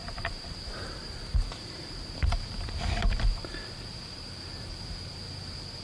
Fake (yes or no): yes